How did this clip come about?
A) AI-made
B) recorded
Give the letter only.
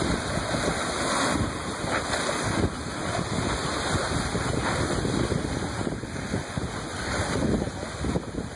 B